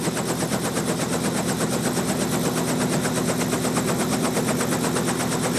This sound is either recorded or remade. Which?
recorded